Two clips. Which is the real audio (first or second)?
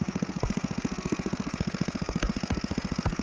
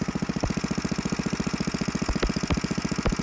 second